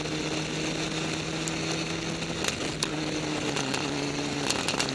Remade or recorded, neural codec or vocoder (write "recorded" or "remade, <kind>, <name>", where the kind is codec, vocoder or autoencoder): recorded